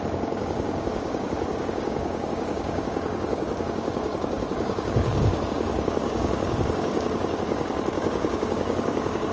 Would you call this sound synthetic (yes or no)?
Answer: yes